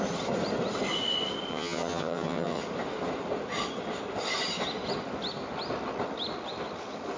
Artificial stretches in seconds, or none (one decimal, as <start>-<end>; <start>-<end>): 1.5-2.6